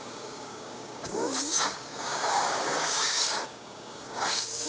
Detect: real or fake fake